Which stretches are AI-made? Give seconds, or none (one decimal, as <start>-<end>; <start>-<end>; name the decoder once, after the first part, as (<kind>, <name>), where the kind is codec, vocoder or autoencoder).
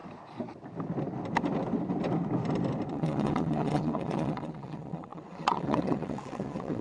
2.9-6.8 (vocoder, WaveNeXt)